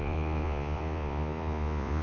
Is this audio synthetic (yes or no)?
yes